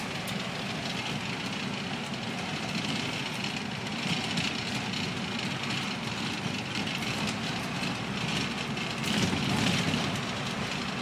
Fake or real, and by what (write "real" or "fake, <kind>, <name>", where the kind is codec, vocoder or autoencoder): real